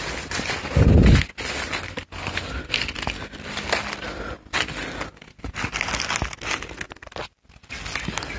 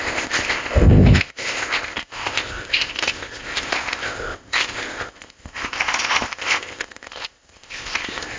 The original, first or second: first